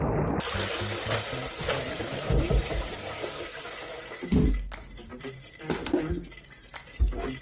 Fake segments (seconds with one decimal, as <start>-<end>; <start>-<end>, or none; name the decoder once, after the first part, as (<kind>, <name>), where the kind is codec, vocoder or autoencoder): 1.4-3.2 (vocoder, BigVGAN v2)